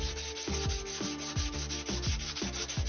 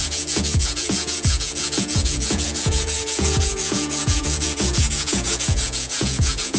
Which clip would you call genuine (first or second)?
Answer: first